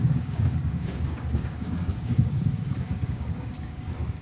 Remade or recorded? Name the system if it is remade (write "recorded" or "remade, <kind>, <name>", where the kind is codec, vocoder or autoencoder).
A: remade, codec, DAC